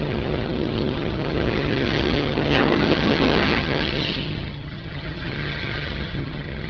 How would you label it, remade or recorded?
remade